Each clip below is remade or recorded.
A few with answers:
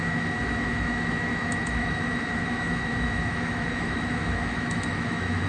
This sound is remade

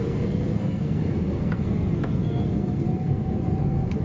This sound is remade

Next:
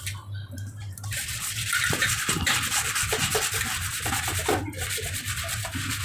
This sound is remade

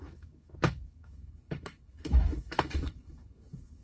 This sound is remade